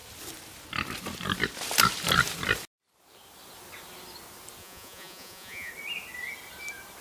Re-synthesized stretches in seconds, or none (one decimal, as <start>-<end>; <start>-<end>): 4.6-5.7